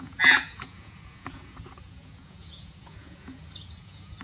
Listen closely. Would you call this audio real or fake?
fake